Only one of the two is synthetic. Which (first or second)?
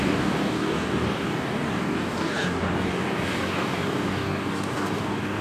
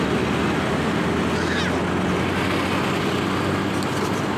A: first